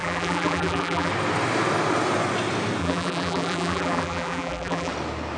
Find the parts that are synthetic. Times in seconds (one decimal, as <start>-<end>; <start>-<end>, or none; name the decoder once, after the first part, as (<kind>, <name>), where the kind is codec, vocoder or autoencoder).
0.0-1.1 (vocoder, BigVGAN v2); 2.8-4.9